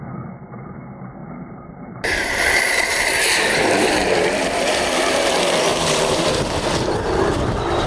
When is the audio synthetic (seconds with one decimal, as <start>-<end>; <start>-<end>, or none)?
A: 1.2-3.0; 5.7-6.3